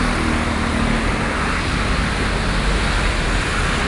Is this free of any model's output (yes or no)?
yes